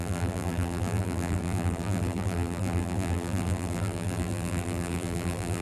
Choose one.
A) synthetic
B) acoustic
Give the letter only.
A